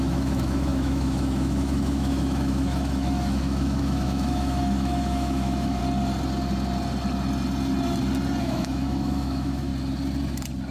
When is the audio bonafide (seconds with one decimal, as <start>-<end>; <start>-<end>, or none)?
5.8-8.4; 9.7-10.7